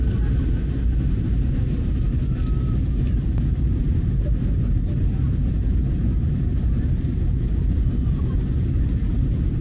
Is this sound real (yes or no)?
no